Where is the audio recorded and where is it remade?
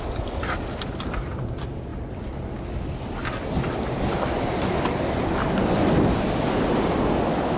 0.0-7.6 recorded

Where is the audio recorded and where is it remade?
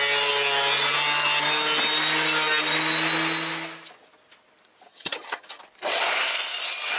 0.0-4.9 recorded; 4.9-5.6 remade; 5.6-7.0 recorded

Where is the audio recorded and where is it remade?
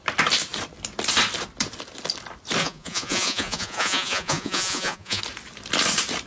0.0-2.6 recorded; 2.6-5.2 remade; 5.2-6.3 recorded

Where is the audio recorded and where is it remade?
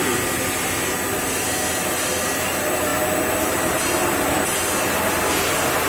0.0-5.9 recorded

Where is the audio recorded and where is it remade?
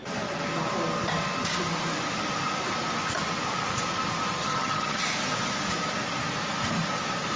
0.0-4.4 recorded; 4.4-5.0 remade; 5.0-7.4 recorded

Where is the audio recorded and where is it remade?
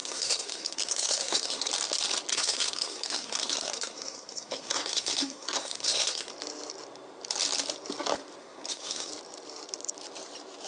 0.0-1.7 remade; 1.7-2.3 recorded; 2.3-6.3 remade; 6.3-8.4 recorded; 8.4-9.1 remade; 9.1-10.7 recorded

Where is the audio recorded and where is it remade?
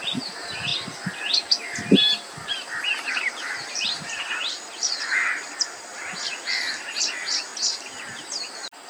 0.0-0.7 remade; 0.7-3.0 recorded; 3.0-5.9 remade; 5.9-6.5 recorded; 6.5-7.5 remade; 7.5-8.9 recorded